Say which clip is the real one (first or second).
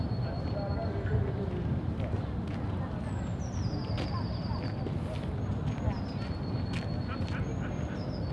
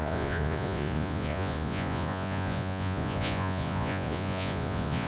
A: first